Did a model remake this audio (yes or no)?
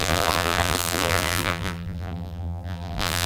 yes